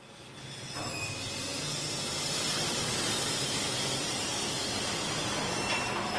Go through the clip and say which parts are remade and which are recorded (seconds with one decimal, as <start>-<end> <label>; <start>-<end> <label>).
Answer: 0.0-6.2 recorded